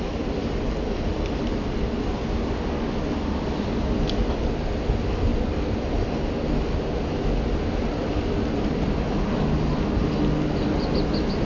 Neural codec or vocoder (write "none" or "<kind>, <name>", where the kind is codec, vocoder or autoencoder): none